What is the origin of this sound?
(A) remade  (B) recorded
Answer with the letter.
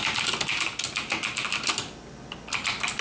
B